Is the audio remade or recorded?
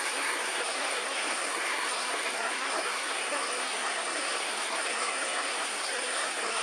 remade